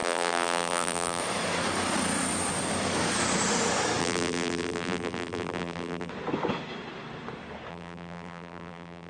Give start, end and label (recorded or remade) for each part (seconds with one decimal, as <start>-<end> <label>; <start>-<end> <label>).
0.0-1.2 remade; 1.2-4.0 recorded; 4.0-6.1 remade; 6.1-7.7 recorded; 7.7-9.1 remade

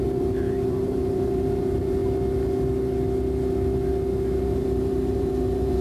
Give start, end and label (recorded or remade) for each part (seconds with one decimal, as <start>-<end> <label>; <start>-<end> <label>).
0.0-2.0 remade; 2.0-4.4 recorded; 4.4-5.8 remade

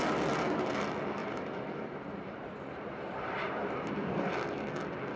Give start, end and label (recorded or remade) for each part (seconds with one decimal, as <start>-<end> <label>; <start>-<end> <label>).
0.0-1.2 recorded; 1.2-4.3 remade; 4.3-5.2 recorded

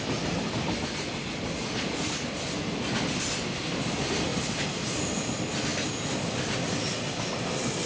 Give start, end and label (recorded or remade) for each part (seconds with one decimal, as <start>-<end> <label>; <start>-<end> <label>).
0.0-7.9 recorded

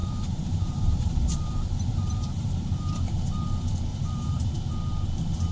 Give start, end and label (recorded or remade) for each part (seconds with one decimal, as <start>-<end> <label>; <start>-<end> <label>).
0.0-3.3 remade; 3.3-3.9 recorded; 3.9-4.5 remade; 4.5-5.5 recorded

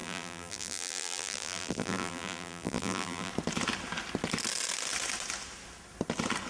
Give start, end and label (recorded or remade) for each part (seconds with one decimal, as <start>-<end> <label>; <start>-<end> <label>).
0.0-3.3 remade; 3.3-6.5 recorded